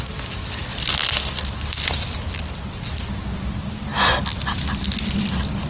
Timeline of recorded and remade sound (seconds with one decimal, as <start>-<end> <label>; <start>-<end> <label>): 0.0-5.7 recorded